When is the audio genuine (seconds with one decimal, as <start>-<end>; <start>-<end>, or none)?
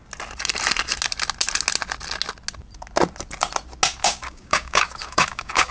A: 0.0-4.0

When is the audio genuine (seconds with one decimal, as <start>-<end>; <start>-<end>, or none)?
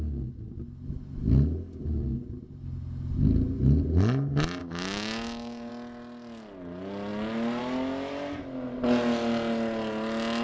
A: 0.0-4.6; 5.7-10.4